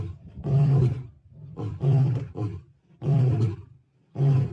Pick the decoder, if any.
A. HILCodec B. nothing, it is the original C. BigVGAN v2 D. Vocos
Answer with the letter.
C